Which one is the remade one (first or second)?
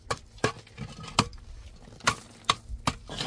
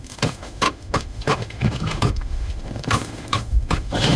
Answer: second